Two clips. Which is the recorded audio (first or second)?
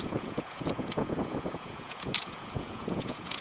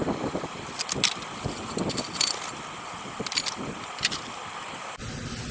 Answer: second